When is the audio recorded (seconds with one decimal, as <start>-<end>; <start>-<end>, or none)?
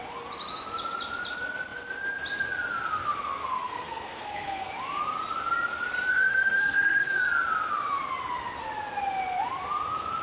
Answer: 0.0-3.2; 4.7-6.1; 7.2-10.2